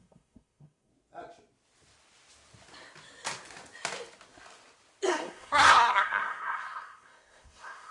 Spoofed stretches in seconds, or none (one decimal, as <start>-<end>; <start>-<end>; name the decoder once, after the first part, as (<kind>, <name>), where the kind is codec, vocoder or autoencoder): 0.0-0.9 (codec, SNAC); 5.1-7.9